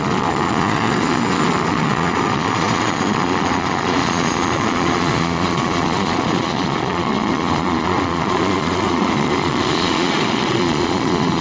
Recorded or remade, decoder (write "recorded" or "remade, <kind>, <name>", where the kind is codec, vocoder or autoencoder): remade, vocoder, Vocos